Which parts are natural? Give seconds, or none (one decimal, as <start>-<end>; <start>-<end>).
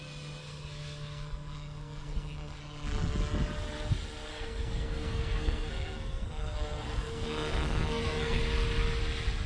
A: 0.0-0.4; 2.6-4.3; 8.4-9.5